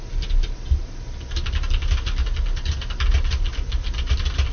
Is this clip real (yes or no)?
yes